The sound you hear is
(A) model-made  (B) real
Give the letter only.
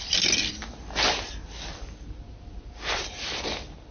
B